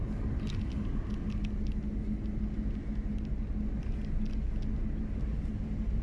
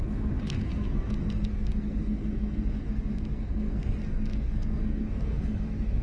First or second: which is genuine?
first